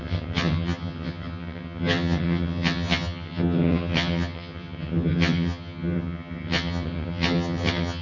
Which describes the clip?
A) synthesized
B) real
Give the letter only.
A